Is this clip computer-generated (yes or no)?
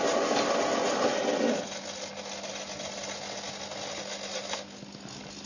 no